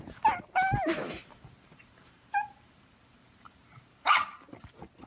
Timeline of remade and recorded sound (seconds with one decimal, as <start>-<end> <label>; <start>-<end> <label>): 0.0-1.1 recorded; 1.1-4.1 remade; 4.1-5.1 recorded